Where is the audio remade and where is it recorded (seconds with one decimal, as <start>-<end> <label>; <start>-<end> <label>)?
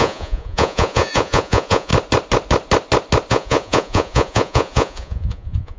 0.0-1.9 remade; 1.9-3.3 recorded; 3.3-5.8 remade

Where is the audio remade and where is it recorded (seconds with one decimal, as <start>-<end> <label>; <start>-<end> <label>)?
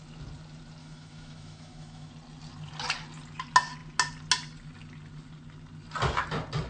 0.0-0.8 recorded; 0.8-2.1 remade; 2.1-6.7 recorded